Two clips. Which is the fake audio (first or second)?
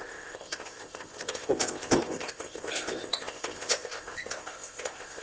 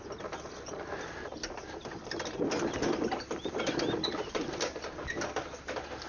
first